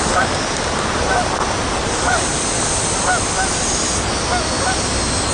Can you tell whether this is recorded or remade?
recorded